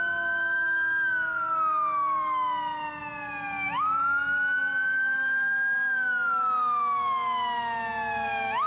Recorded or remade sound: recorded